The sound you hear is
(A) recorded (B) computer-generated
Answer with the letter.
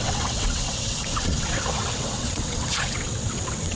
B